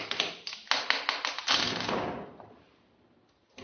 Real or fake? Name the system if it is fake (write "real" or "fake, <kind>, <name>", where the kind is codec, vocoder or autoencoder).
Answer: real